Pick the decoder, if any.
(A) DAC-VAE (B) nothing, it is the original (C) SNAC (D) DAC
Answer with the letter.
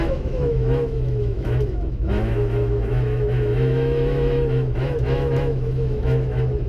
A